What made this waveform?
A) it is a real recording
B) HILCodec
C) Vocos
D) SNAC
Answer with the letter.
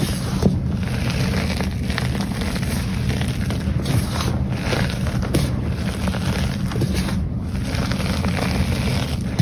A